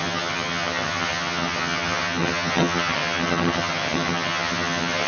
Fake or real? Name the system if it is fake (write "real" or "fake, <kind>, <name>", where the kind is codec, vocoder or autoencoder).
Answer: fake, vocoder, HiFi-GAN